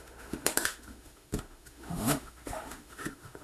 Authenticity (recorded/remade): remade